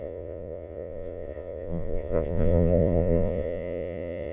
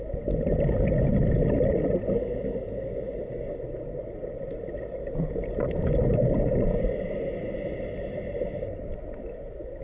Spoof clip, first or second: first